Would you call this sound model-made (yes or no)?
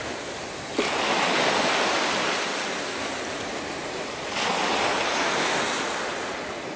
no